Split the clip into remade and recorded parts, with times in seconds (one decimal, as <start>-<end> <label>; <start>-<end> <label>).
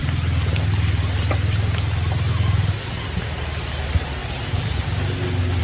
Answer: 0.0-5.6 recorded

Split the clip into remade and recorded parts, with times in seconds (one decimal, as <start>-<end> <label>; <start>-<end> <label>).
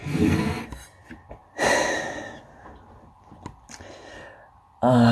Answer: 0.0-0.6 remade; 0.6-5.1 recorded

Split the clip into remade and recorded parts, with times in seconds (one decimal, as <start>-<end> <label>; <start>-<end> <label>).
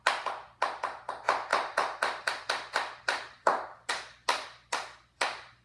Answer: 0.0-1.5 recorded; 1.5-2.3 remade; 2.3-3.1 recorded; 3.1-3.9 remade; 3.9-5.6 recorded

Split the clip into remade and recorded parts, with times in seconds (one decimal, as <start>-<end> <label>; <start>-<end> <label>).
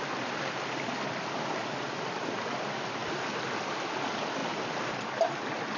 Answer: 0.0-5.8 recorded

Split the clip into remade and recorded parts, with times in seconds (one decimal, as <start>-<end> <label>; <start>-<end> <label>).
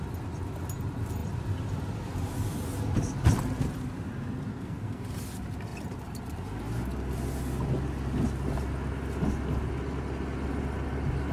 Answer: 0.0-4.5 recorded; 4.5-5.0 remade; 5.0-11.3 recorded